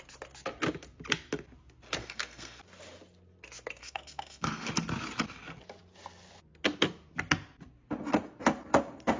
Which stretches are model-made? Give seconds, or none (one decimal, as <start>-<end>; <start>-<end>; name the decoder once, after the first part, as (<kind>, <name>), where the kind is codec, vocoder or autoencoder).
2.0-2.6 (codec, SNAC); 3.8-4.7